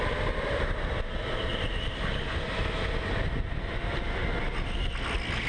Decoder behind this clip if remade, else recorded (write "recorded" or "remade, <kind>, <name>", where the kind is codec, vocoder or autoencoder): recorded